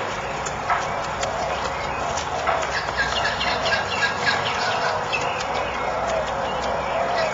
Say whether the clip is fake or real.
real